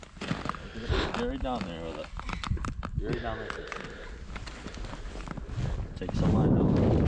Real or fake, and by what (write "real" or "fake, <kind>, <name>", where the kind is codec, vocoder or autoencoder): real